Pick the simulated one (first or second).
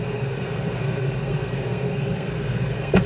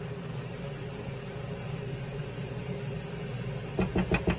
first